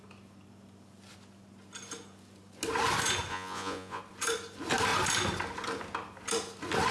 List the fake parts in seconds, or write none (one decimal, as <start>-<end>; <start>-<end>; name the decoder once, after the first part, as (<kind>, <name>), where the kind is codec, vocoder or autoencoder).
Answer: 3.3-4.0 (vocoder, Vocos)